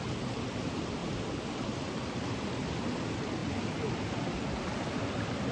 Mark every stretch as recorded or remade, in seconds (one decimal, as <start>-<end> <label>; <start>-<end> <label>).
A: 0.0-5.5 recorded

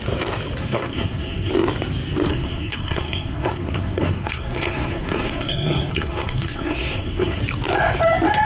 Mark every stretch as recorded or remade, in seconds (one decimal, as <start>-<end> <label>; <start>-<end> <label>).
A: 0.0-0.6 recorded; 0.6-1.5 remade; 1.5-2.3 recorded; 2.3-7.4 remade; 7.4-8.5 recorded